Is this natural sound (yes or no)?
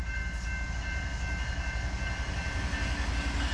yes